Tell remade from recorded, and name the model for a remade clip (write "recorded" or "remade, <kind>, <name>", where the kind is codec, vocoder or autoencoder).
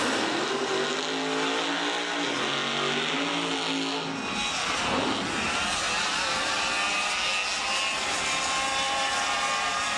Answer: recorded